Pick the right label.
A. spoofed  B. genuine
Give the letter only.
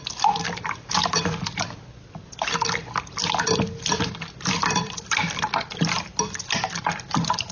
B